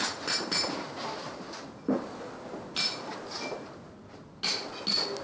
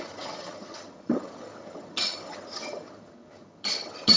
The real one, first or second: first